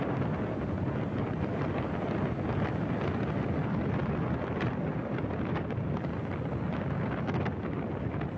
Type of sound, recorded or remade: recorded